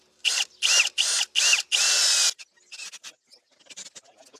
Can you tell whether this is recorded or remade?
recorded